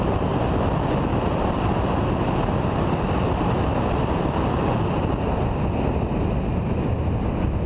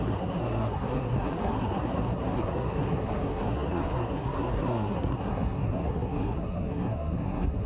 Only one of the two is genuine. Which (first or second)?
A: first